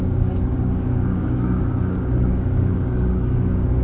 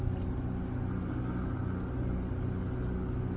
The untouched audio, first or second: second